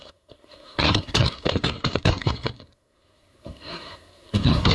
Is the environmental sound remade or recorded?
remade